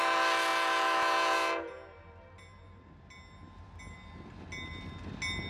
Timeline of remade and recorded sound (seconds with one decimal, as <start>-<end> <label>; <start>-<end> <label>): 0.0-5.5 recorded